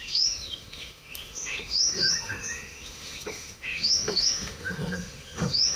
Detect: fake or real fake